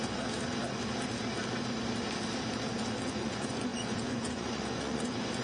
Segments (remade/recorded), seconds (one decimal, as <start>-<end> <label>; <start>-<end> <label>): 0.0-3.1 recorded; 3.1-5.4 remade